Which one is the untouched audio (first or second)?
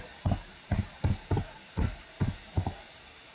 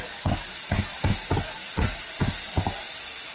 second